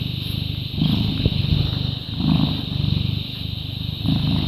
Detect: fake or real real